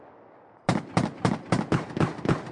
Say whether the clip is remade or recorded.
recorded